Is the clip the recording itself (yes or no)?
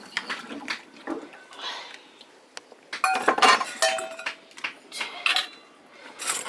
yes